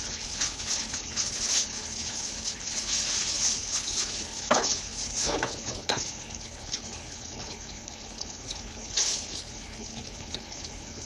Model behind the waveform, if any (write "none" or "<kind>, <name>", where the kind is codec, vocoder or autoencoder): codec, HILCodec